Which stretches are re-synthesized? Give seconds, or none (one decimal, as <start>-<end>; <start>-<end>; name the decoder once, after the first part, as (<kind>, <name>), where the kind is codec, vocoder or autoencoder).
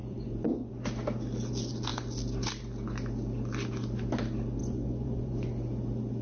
0.0-0.7 (vocoder, Vocos); 4.6-5.5